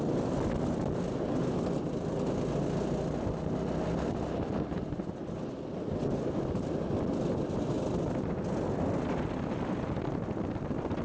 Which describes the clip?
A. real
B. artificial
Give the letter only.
A